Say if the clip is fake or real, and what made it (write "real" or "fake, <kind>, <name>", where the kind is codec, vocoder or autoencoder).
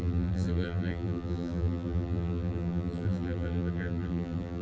fake, vocoder, BigVGAN v2